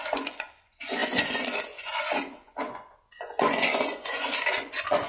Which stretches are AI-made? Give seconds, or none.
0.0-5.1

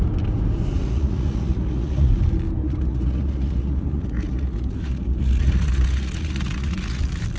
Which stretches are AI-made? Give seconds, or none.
0.8-2.1; 2.6-7.0

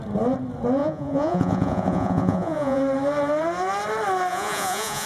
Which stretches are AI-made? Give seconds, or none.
0.8-2.8; 4.3-5.1

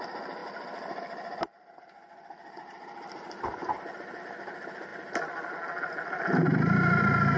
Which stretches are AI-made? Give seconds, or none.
none

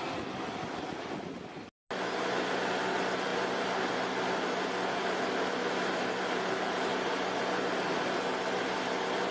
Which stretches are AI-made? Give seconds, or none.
none

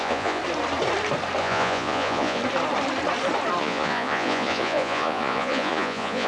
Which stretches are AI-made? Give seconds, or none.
0.0-0.4; 1.4-2.4; 3.6-6.3

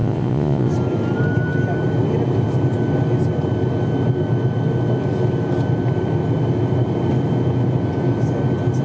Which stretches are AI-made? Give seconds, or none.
0.0-0.7

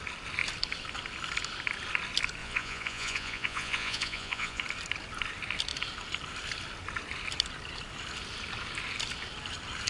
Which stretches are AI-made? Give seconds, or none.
2.4-4.6